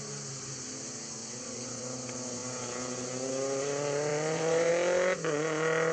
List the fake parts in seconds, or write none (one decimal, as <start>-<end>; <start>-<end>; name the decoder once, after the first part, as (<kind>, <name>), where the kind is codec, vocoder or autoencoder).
1.2-1.8 (vocoder, Vocos); 4.1-4.7

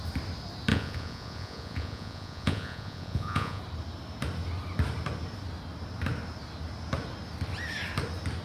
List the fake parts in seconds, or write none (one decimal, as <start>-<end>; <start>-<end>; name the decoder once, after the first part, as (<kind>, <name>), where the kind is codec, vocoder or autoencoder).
0.7-3.6 (vocoder, Vocos)

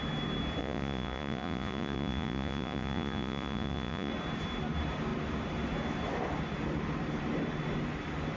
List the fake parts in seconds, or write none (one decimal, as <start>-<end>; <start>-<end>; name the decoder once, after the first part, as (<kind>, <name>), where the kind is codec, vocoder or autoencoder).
0.6-4.1 (vocoder, Vocos)

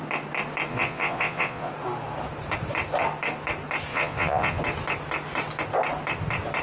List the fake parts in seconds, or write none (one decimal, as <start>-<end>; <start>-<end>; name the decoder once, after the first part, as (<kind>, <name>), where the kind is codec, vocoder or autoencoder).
0.7-1.7 (vocoder, Vocos); 3.9-4.6